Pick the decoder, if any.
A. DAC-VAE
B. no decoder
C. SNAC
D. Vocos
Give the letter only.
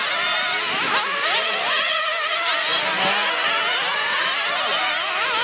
B